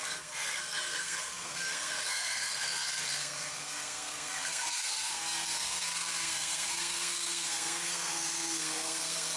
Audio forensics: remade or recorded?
remade